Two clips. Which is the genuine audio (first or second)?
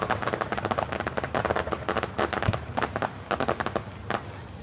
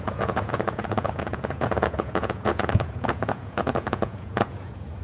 first